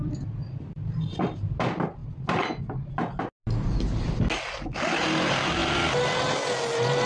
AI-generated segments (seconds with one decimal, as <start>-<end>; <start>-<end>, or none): none